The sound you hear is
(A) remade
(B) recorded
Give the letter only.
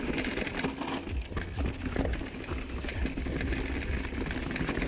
B